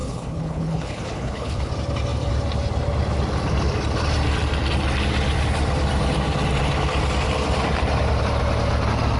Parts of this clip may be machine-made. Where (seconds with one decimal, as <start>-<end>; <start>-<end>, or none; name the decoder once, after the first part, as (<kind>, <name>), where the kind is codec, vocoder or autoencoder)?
0.0-1.7 (codec, HILCodec)